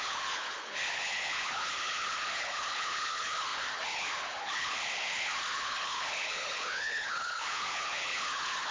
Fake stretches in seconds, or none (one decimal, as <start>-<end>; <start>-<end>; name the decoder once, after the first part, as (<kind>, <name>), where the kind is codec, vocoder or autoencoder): 0.0-8.7 (codec, HILCodec)